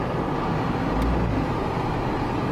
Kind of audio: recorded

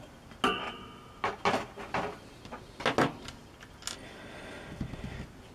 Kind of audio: recorded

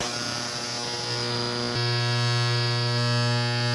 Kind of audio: recorded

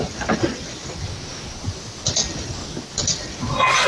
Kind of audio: recorded